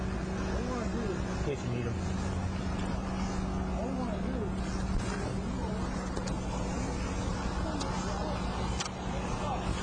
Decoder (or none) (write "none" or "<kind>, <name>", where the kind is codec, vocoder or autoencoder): none